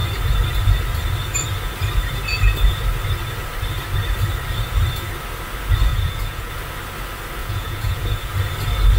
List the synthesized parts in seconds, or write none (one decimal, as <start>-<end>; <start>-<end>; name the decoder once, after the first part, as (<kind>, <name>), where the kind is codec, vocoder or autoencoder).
5.9-6.5 (vocoder, Vocos); 7.4-8.3